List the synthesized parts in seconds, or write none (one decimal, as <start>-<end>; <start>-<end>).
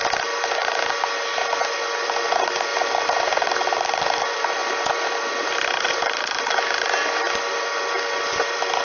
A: none